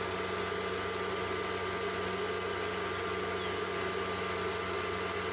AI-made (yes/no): no